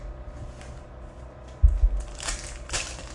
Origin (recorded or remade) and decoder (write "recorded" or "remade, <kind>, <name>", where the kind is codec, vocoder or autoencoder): recorded